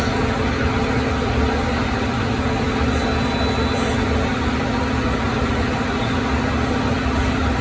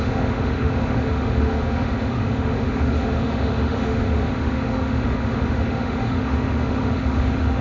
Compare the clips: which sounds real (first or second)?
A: first